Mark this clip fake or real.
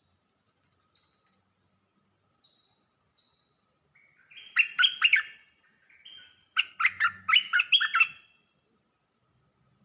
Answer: real